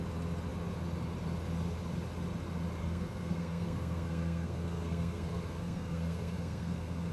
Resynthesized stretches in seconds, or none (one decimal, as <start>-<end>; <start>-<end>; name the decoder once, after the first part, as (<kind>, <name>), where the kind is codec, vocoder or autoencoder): 2.8-7.1 (codec, SNAC)